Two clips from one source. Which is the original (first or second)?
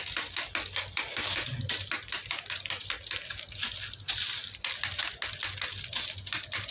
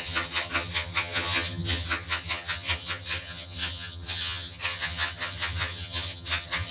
first